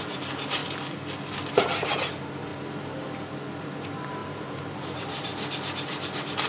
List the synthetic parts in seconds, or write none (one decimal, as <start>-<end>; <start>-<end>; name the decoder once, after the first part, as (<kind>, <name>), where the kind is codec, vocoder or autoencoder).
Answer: 0.0-0.6 (vocoder, BigVGAN v2); 1.5-2.5; 3.6-5.3